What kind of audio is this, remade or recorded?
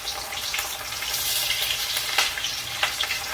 recorded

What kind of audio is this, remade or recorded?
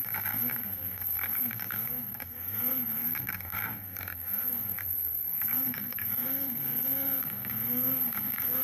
remade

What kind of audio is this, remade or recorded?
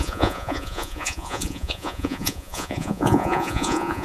remade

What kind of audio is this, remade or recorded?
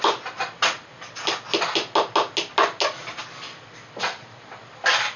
recorded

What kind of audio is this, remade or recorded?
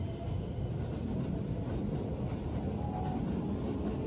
recorded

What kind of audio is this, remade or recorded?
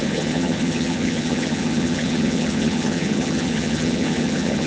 remade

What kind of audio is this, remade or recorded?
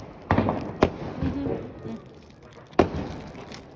recorded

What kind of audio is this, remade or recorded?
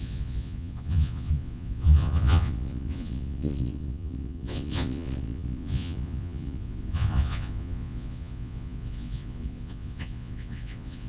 remade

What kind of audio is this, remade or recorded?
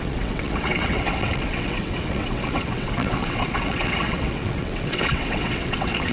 remade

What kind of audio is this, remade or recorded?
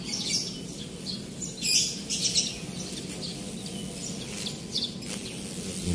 recorded